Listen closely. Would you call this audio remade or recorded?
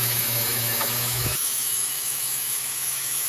remade